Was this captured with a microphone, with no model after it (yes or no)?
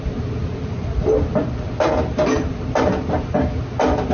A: yes